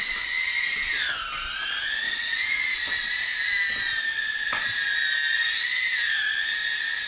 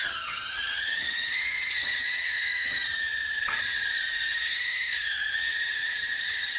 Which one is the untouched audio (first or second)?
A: first